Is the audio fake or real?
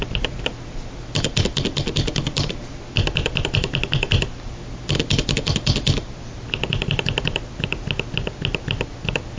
real